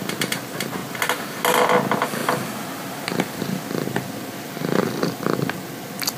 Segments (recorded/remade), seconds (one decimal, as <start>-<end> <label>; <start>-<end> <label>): 0.0-6.2 recorded